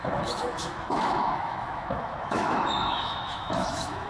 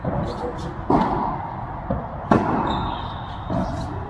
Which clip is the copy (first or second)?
first